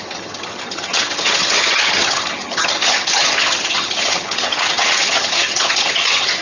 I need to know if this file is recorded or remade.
remade